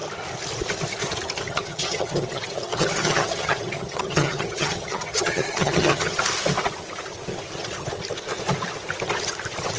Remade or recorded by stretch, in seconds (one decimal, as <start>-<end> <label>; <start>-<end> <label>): 0.0-1.5 recorded; 1.5-6.2 remade; 6.2-9.8 recorded

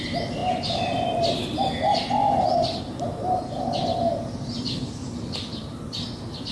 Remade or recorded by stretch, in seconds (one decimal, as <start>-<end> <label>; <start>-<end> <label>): 0.0-6.5 recorded

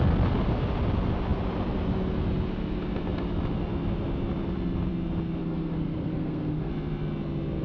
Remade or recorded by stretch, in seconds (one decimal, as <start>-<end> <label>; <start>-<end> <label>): 0.0-5.4 recorded; 5.4-6.7 remade; 6.7-7.6 recorded

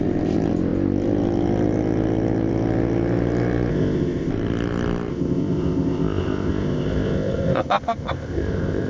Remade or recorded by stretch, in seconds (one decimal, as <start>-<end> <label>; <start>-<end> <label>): 0.0-3.7 recorded; 3.7-4.3 remade; 4.3-5.1 recorded; 5.1-8.9 remade

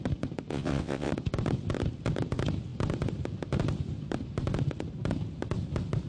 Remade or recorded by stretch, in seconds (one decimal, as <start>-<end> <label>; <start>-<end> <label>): 0.0-0.5 recorded; 0.5-1.1 remade; 1.1-6.1 recorded

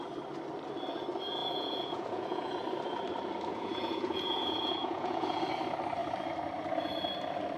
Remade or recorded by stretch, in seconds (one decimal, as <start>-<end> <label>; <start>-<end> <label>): 0.0-1.4 recorded; 1.4-2.5 remade; 2.5-3.5 recorded; 3.5-5.5 remade; 5.5-7.6 recorded

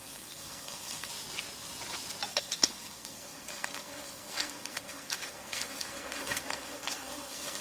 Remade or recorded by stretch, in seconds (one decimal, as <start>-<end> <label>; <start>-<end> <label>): 0.0-1.1 remade; 1.1-2.3 recorded; 2.3-7.6 remade

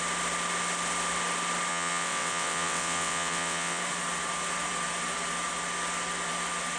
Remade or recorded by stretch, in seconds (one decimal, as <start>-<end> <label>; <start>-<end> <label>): 0.0-1.7 recorded; 1.7-3.8 remade; 3.8-6.8 recorded